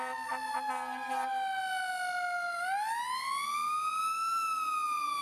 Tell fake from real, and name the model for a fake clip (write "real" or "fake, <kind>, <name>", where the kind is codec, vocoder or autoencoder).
real